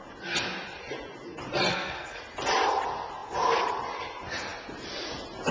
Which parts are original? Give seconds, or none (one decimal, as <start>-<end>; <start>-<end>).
0.0-1.7; 2.2-5.5